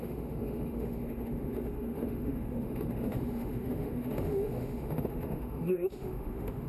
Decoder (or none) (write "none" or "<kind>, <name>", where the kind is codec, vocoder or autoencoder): autoencoder, DAC-VAE